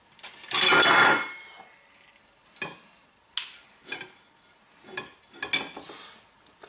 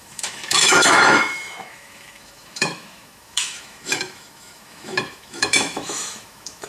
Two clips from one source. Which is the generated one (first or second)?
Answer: second